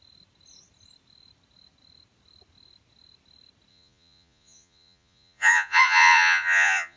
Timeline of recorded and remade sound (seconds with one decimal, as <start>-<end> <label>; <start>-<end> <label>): 0.0-3.7 recorded; 3.7-7.0 remade